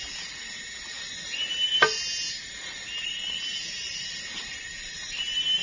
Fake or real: real